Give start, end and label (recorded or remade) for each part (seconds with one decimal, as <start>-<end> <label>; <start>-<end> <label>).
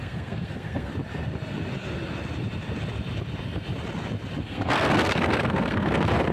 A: 0.0-0.9 remade; 0.9-4.4 recorded; 4.4-6.3 remade